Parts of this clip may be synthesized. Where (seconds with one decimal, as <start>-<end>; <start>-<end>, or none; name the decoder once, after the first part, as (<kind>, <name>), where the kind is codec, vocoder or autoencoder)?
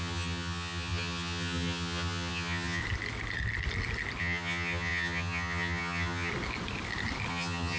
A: 0.0-2.8 (vocoder, HiFi-GAN); 4.2-6.3; 7.3-7.8